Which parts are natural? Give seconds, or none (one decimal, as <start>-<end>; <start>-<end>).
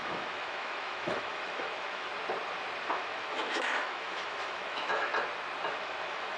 2.1-2.9; 5.1-5.7